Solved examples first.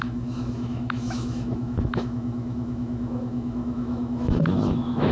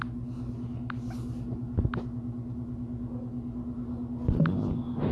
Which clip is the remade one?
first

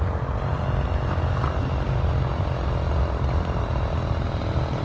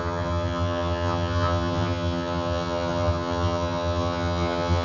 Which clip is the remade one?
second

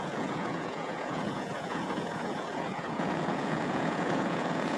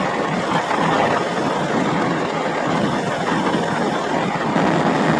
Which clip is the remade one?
first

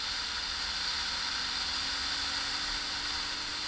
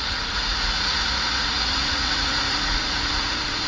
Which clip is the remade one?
second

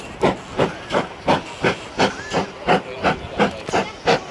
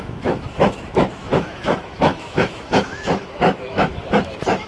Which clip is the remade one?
second